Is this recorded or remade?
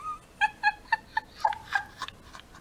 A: recorded